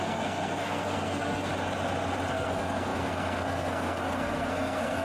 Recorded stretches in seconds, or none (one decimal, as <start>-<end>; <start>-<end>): 1.5-2.3